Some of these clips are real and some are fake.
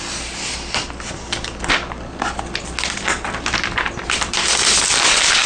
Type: real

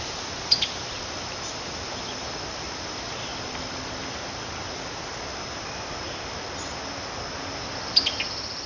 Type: real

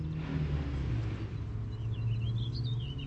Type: real